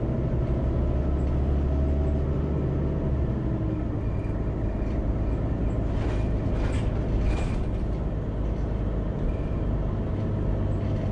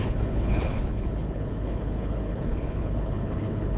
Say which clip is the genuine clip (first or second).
first